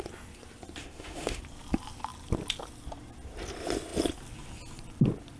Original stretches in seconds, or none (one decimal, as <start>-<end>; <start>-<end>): 0.0-0.8; 1.4-5.4